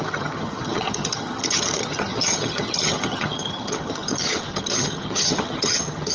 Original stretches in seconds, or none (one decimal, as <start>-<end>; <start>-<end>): none